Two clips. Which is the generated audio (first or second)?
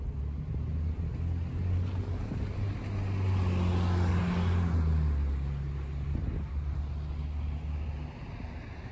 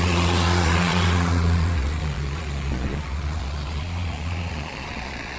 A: second